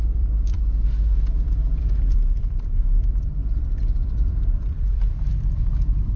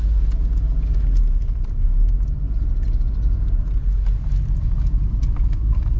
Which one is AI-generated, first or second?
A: first